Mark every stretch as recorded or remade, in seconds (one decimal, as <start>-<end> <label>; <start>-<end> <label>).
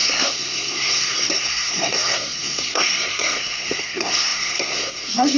0.0-5.4 remade